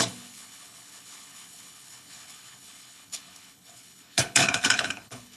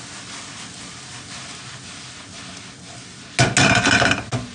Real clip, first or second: second